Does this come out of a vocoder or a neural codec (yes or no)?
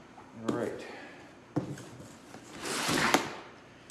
no